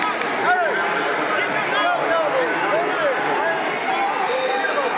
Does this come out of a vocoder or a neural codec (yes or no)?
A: no